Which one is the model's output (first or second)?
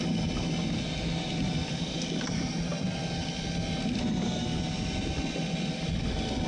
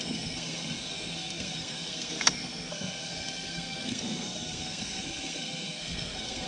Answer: second